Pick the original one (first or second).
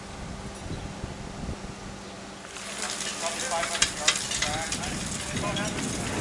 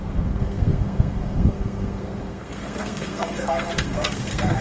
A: first